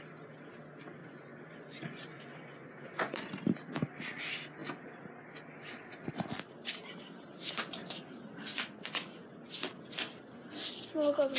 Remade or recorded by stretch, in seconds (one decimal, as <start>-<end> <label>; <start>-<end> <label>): 0.0-1.0 recorded; 1.0-3.3 remade; 3.3-8.5 recorded; 8.5-9.3 remade; 9.3-11.4 recorded